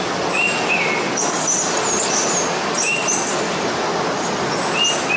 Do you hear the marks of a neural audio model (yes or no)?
no